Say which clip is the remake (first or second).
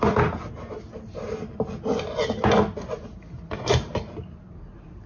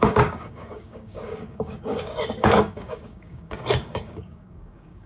second